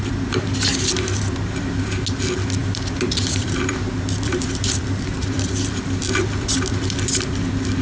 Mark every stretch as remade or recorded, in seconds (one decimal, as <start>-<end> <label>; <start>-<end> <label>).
0.0-2.6 recorded; 2.6-4.8 remade; 4.8-5.2 recorded; 5.2-7.8 remade